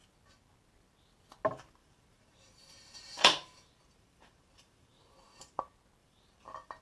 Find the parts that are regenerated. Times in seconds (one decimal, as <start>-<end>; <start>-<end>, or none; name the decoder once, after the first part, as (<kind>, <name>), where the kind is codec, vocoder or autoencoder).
1.8-5.6 (vocoder, BigVGAN v2); 6.0-6.8